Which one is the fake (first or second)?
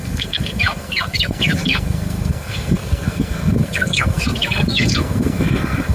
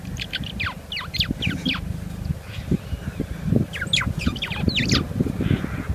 first